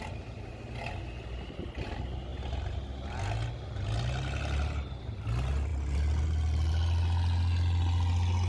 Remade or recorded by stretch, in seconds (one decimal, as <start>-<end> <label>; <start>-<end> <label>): 0.0-8.5 recorded

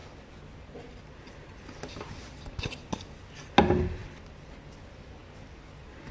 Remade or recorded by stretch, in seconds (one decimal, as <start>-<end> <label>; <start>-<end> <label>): 0.0-6.1 recorded

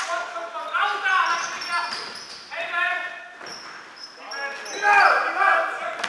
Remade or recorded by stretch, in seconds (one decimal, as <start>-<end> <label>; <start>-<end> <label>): 0.0-3.5 recorded; 3.5-4.3 remade; 4.3-6.1 recorded